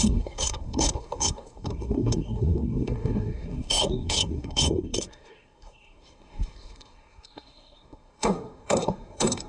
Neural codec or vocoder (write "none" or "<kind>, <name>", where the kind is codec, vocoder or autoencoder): codec, SNAC